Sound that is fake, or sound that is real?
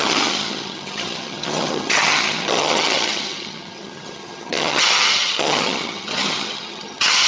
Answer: fake